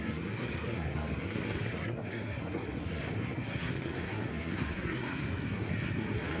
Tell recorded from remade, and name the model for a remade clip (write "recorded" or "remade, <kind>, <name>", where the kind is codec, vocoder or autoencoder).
remade, codec, SNAC